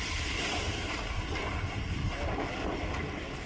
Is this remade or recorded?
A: recorded